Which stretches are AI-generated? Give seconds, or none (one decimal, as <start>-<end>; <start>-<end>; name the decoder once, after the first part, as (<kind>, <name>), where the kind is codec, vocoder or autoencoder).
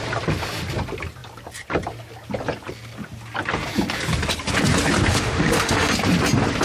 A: 5.1-5.9 (autoencoder, DAC-VAE)